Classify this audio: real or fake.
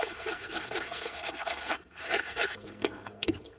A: fake